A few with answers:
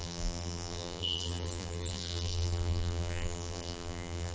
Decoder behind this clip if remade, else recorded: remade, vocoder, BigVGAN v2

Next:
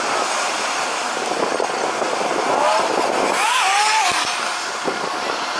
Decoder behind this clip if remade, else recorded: recorded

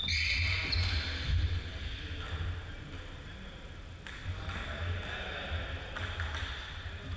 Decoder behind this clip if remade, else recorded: recorded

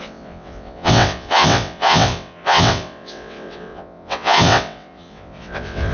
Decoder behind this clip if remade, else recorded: remade, vocoder, WaveNeXt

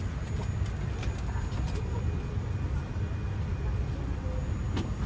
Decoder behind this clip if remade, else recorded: recorded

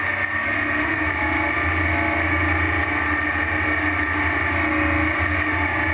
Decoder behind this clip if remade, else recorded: recorded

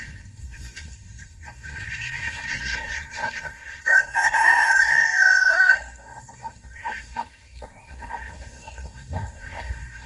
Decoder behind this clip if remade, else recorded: remade, codec, SNAC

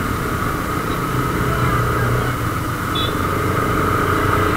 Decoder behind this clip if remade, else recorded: recorded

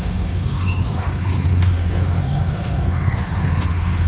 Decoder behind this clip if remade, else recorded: remade, autoencoder, DAC-VAE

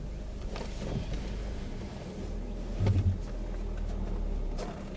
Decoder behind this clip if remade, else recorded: recorded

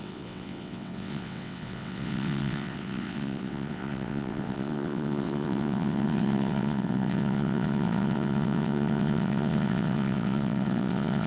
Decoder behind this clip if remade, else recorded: remade, vocoder, WaveNeXt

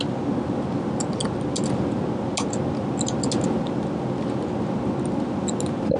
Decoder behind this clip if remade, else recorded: recorded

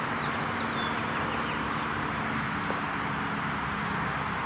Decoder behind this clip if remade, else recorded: recorded